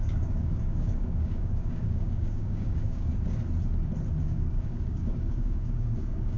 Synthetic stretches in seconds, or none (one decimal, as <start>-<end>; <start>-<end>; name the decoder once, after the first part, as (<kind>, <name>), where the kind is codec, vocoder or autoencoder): 0.0-3.1 (codec, DAC); 4.2-6.4